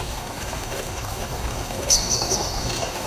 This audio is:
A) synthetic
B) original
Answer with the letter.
A